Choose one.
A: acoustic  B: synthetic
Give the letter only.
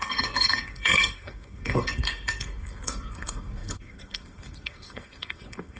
B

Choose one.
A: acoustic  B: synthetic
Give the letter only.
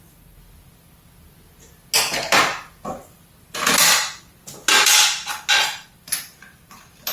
A